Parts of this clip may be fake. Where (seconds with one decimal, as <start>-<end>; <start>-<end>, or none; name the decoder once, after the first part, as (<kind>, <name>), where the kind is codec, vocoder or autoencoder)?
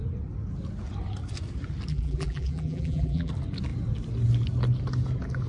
1.9-3.3 (vocoder, BigVGAN v2)